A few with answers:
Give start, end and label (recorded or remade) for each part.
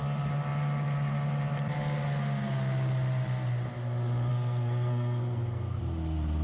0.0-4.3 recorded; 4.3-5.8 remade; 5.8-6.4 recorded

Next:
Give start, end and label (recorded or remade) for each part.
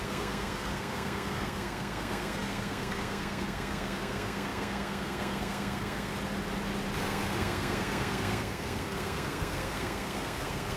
0.0-6.1 remade; 6.1-7.0 recorded; 7.0-10.8 remade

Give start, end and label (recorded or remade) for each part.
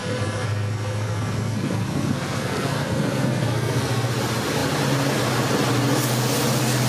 0.0-4.1 remade; 4.1-6.9 recorded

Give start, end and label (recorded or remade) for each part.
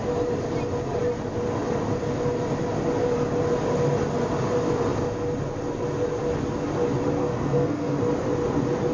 0.0-7.2 recorded; 7.2-8.0 remade; 8.0-8.9 recorded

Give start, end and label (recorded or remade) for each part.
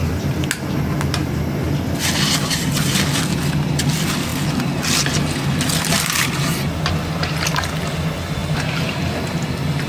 0.0-9.9 recorded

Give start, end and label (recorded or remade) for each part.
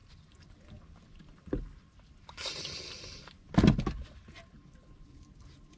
0.0-5.8 recorded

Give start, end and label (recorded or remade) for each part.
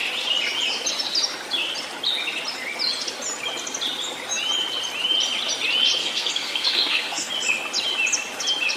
0.0-6.0 recorded; 6.0-7.3 remade; 7.3-8.8 recorded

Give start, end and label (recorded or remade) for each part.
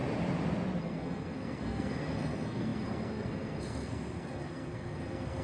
0.0-0.8 recorded; 0.8-5.4 remade